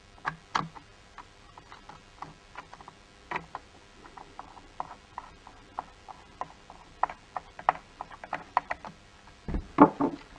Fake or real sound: real